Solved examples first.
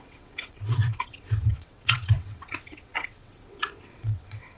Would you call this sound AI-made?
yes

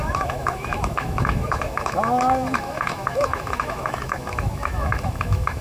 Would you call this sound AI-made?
yes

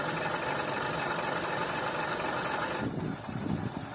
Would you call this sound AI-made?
no